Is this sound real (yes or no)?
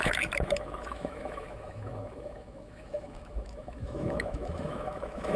no